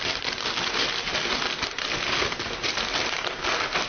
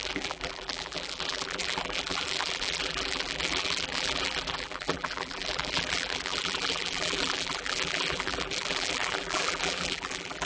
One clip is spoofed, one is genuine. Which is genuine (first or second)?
first